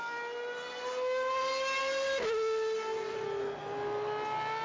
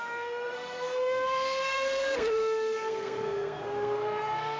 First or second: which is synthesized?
second